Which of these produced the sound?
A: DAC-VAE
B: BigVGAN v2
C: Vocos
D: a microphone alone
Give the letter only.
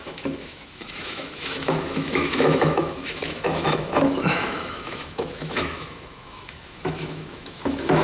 A